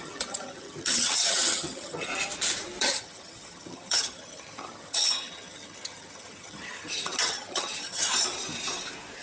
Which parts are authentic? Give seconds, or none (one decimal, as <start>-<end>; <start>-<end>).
2.1-2.8; 8.0-9.2